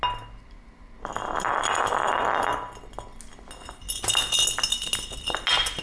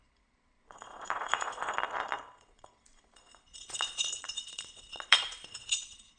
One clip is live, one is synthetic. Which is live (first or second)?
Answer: first